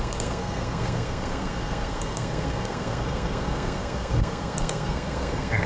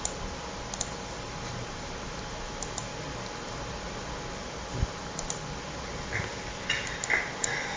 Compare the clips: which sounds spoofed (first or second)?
first